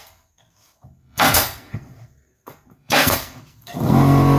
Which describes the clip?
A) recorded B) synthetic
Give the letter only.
B